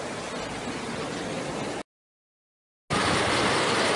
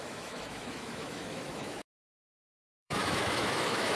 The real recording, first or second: first